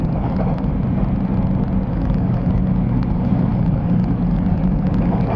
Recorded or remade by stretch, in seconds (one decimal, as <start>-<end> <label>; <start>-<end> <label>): 0.0-0.7 remade; 0.7-1.9 recorded; 1.9-5.4 remade